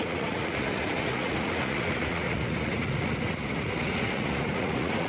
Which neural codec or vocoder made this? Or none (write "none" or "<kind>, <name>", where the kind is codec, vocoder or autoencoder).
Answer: vocoder, Vocos